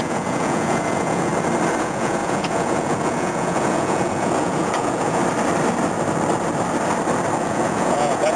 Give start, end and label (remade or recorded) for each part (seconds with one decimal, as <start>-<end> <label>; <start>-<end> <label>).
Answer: 0.0-1.3 remade; 1.3-1.8 recorded; 1.8-5.2 remade; 5.2-7.4 recorded; 7.4-8.4 remade